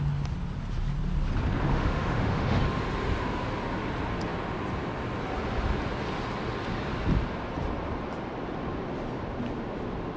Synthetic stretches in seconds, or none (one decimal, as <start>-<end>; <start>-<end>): 1.7-2.6